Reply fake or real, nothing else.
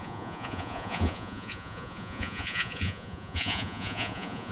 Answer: fake